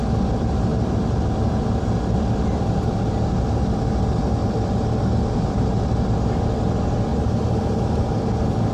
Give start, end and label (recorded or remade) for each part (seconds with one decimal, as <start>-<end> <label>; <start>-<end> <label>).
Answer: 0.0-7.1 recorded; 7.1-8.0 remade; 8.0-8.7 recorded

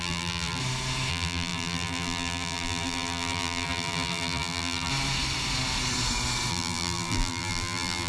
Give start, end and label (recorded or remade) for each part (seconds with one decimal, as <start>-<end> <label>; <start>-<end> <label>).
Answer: 0.0-0.6 remade; 0.6-1.1 recorded; 1.1-4.9 remade; 4.9-6.5 recorded; 6.5-8.1 remade

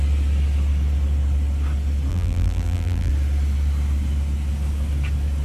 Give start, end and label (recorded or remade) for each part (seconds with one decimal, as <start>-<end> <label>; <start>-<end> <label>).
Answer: 0.0-2.1 recorded; 2.1-3.1 remade; 3.1-5.4 recorded